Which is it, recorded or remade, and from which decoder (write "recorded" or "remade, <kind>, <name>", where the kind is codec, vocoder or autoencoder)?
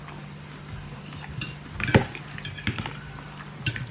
recorded